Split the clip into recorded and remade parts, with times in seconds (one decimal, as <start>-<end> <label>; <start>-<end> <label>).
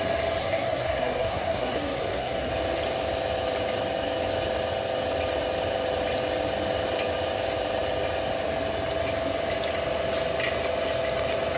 0.0-0.4 recorded; 0.4-2.5 remade; 2.5-11.6 recorded